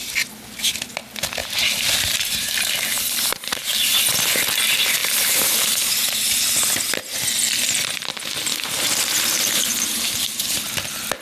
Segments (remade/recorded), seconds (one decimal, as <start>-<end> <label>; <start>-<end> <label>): 0.0-1.4 recorded; 1.4-4.0 remade; 4.0-5.0 recorded; 5.0-5.9 remade; 5.9-8.5 recorded; 8.5-10.6 remade; 10.6-11.2 recorded